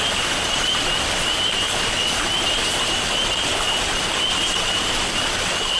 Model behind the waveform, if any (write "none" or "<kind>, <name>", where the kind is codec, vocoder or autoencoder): none